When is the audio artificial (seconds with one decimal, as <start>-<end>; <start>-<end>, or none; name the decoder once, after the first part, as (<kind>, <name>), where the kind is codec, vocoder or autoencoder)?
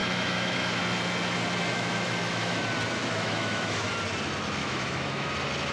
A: 0.0-0.8 (autoencoder, DAC-VAE); 1.7-2.6; 3.0-3.9; 4.6-5.3